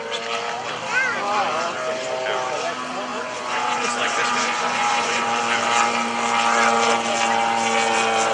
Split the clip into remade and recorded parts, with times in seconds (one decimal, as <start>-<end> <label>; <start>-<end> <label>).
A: 0.0-3.1 recorded; 3.1-5.4 remade; 5.4-8.3 recorded